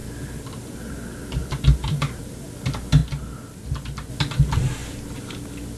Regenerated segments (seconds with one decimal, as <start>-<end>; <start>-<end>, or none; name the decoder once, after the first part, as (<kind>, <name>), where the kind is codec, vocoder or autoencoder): 0.0-0.9 (vocoder, BigVGAN v2); 1.4-2.2; 3.0-4.1; 4.8-5.8